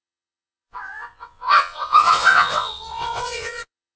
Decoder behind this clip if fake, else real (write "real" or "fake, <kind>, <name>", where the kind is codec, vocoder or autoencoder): fake, vocoder, WaveNeXt